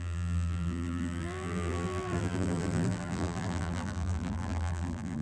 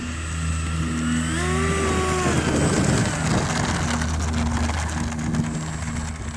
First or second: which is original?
second